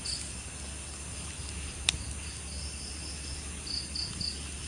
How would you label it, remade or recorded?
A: recorded